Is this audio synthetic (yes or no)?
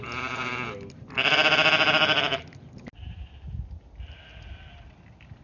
no